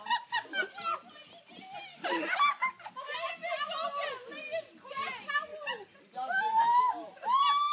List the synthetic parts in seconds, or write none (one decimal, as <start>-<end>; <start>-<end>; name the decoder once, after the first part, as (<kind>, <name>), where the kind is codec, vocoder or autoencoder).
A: none